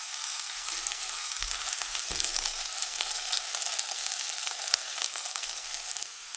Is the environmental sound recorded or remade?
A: remade